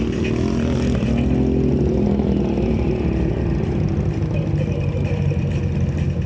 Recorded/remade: recorded